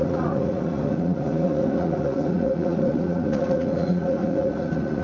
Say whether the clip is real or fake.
fake